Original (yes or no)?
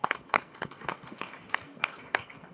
no